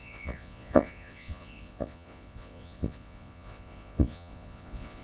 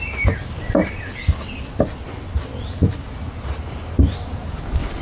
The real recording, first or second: second